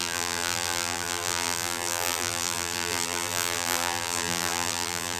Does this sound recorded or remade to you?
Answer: remade